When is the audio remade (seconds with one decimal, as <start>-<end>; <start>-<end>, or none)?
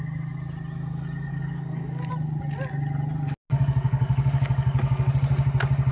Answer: 1.3-2.1; 3.5-5.1